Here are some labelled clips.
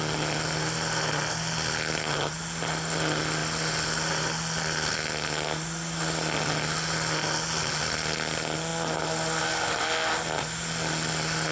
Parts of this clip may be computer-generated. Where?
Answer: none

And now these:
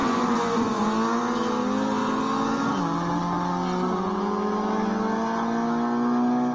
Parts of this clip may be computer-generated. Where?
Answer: 0.0-0.8 (vocoder, Vocos)

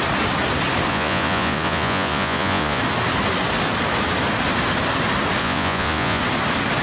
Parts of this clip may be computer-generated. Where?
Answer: 0.9-2.8 (vocoder, Vocos); 5.4-6.2